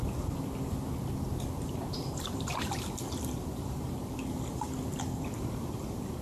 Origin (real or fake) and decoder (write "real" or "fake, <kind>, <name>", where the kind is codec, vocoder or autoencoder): real